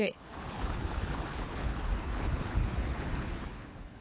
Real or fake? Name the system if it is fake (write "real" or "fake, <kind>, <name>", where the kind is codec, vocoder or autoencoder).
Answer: fake, codec, HILCodec